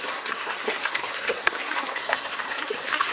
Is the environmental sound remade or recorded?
remade